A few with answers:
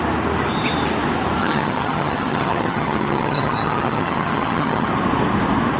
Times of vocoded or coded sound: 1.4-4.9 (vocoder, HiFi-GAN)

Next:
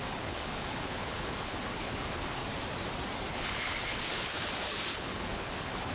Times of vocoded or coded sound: 0.0-2.4 (codec, HILCodec); 3.3-5.9

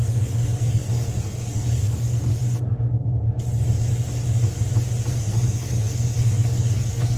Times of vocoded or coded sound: 0.0-2.3 (codec, SNAC); 5.1-7.2

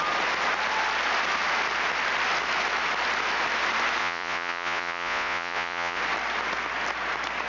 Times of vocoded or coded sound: 4.0-6.0 (vocoder, Vocos)

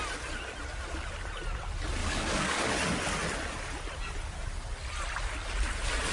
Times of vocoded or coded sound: 2.0-2.7 (codec, DAC)

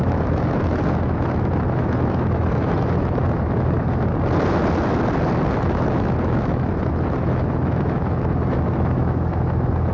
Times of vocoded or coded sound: 0.0-4.1 (autoencoder, DAC-VAE); 5.5-9.9

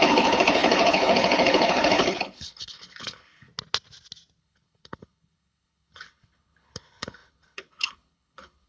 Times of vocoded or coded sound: 0.0-3.5 (codec, HILCodec); 4.4-8.7

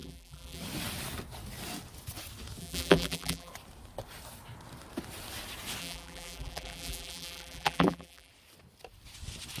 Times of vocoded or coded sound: 0.0-0.6 (vocoder, BigVGAN v2); 2.6-3.5; 5.8-8.3